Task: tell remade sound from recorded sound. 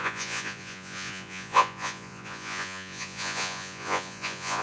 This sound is remade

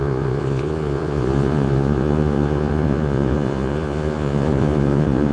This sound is remade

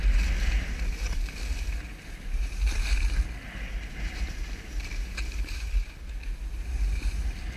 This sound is recorded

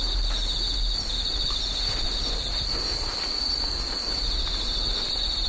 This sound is recorded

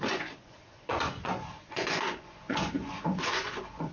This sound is remade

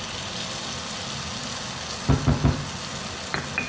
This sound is recorded